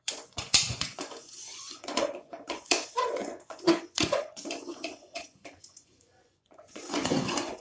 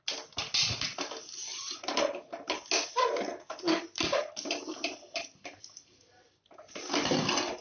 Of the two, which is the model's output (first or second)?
first